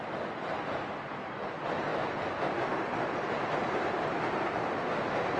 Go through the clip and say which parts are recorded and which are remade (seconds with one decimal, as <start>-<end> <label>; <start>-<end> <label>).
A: 0.0-5.4 recorded